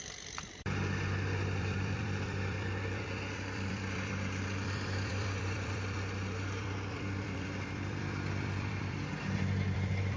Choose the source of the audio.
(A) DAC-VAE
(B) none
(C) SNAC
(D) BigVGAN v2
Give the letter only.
D